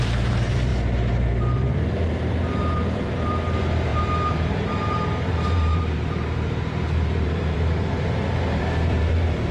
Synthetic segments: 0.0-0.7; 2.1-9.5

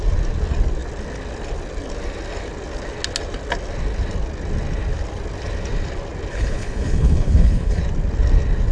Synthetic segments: 6.3-7.8

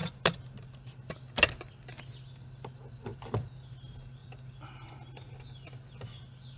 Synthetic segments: none

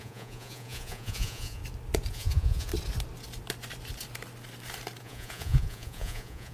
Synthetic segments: 0.0-1.6; 2.1-2.7; 5.0-6.5

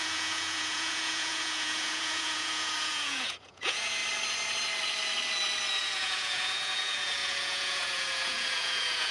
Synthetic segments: 0.0-4.0; 5.7-9.1